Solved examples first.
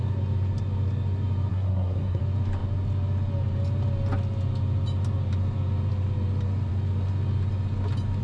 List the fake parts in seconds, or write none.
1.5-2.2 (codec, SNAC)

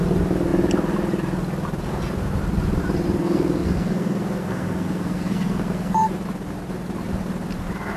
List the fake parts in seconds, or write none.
3.2-6.1 (codec, SNAC)